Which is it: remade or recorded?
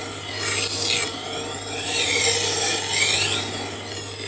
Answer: recorded